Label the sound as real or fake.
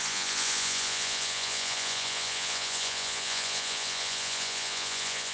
fake